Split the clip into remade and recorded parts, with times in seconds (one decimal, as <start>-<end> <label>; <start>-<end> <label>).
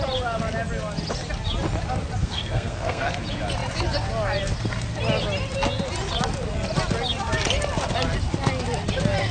0.0-2.2 recorded; 2.2-3.1 remade; 3.1-9.3 recorded